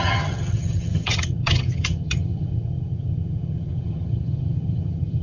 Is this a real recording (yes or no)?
no